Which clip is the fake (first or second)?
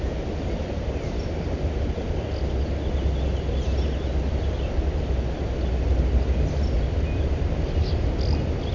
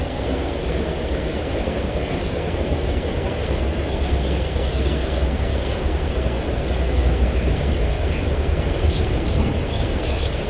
second